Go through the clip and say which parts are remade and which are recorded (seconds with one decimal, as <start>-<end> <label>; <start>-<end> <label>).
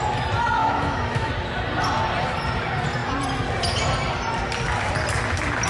0.0-0.6 recorded; 0.6-1.3 remade; 1.3-5.7 recorded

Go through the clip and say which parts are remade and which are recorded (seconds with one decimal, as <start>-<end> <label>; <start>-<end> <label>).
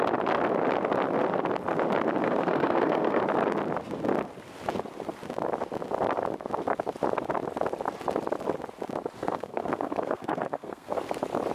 0.0-2.2 recorded; 2.2-3.2 remade; 3.2-9.2 recorded; 9.2-11.0 remade; 11.0-11.5 recorded